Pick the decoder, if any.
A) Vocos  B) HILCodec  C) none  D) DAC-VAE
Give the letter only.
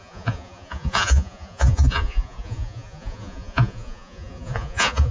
A